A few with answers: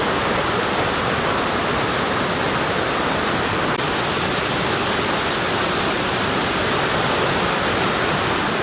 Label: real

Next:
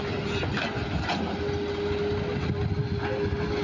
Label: real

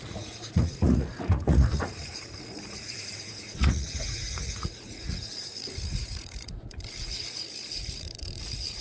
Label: fake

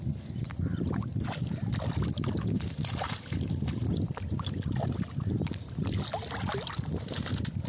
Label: real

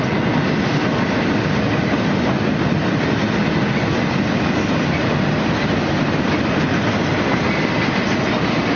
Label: real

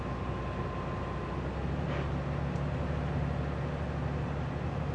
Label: real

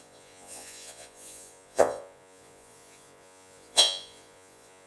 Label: fake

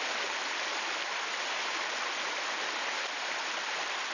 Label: real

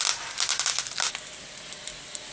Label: real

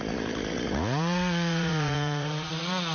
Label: fake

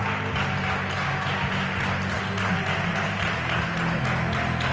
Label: real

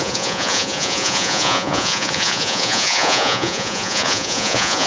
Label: fake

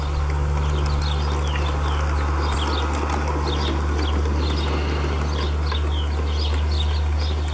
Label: real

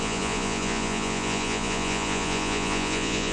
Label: fake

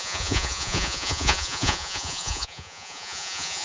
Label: fake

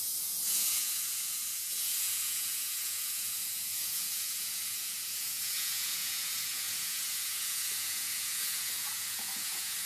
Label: fake